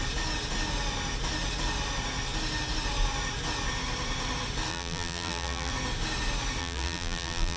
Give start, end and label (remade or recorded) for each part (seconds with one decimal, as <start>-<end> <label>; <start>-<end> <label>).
0.0-4.7 recorded; 4.7-5.7 remade; 5.7-6.6 recorded; 6.6-7.6 remade